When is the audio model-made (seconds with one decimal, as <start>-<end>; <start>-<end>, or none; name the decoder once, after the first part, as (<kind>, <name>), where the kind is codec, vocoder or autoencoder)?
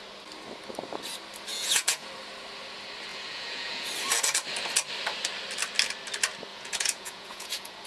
1.5-2.1 (vocoder, Vocos); 3.1-3.9; 6.5-7.9